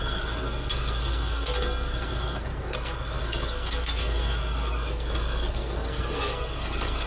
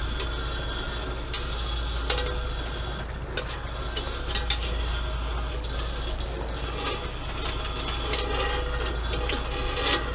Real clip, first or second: second